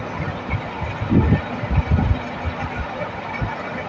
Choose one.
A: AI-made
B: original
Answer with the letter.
B